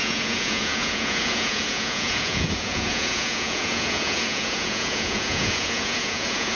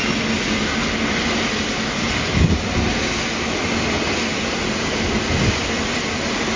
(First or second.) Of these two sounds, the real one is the second